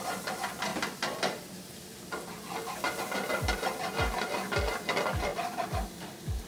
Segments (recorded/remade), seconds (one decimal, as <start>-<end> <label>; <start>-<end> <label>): 0.0-5.3 remade; 5.3-5.9 recorded; 5.9-6.5 remade